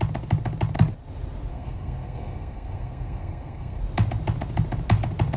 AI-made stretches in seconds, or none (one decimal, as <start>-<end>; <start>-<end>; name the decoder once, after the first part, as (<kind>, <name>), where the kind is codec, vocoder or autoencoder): 1.5-3.8 (codec, SNAC)